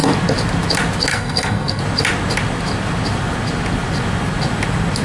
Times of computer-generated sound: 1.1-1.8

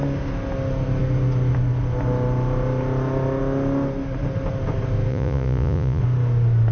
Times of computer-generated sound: 5.1-6.0

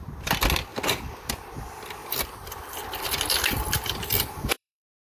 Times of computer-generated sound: 2.0-5.1